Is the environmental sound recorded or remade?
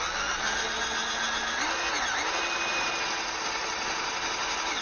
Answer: recorded